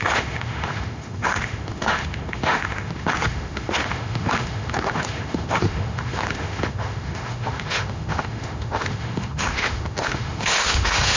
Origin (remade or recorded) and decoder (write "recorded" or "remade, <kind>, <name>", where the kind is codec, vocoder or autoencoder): remade, autoencoder, DAC-VAE